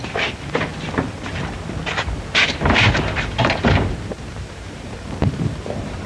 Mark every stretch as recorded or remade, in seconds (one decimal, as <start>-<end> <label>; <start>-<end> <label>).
0.0-0.7 remade; 0.7-2.3 recorded; 2.3-6.1 remade